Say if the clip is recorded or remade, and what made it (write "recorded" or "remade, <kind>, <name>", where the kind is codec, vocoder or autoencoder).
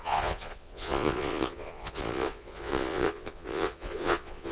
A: remade, vocoder, Vocos